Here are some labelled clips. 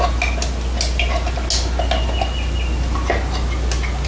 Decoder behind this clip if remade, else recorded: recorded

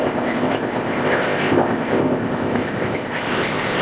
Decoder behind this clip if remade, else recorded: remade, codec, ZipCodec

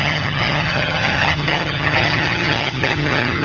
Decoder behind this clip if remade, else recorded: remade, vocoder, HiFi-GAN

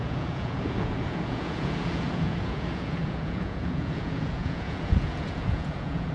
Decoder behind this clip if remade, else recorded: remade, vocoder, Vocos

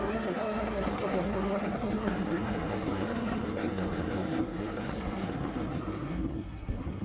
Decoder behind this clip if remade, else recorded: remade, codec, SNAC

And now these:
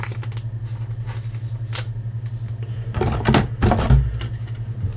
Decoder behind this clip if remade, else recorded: recorded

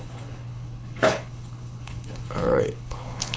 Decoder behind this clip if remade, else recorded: remade, codec, HILCodec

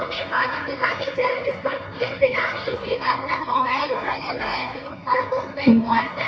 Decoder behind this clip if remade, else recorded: remade, codec, SNAC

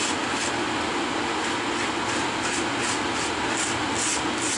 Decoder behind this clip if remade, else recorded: recorded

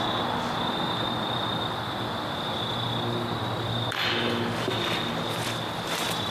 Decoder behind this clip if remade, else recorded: recorded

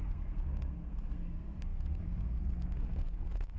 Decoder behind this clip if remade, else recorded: remade, codec, SNAC